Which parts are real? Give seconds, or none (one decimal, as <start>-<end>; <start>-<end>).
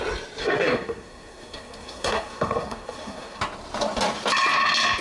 0.0-0.4; 3.4-5.0